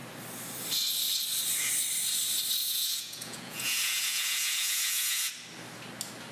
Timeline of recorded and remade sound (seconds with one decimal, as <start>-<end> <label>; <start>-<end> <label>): 0.0-2.6 recorded; 2.6-5.3 remade; 5.3-6.3 recorded